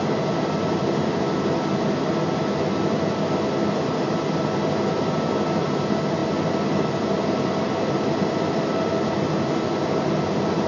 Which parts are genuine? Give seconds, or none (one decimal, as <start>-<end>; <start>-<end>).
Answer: 0.0-10.7